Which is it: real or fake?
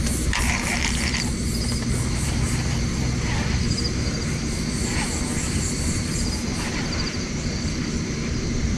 fake